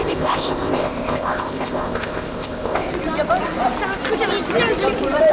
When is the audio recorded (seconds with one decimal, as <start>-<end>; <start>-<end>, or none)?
2.9-5.3

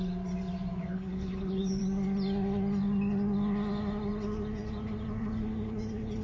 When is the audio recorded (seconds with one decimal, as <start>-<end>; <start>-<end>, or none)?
0.0-0.8; 1.8-6.2